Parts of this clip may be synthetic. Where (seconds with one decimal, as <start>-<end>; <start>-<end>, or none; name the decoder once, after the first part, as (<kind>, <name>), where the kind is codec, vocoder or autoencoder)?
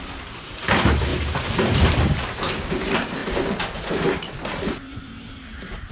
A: 0.0-1.1 (vocoder, BigVGAN v2); 1.8-3.2; 3.9-5.9